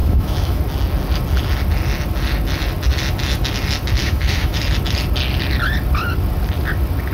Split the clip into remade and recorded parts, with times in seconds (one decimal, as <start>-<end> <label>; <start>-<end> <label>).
0.0-0.6 remade; 0.6-4.0 recorded; 4.0-4.6 remade; 4.6-7.1 recorded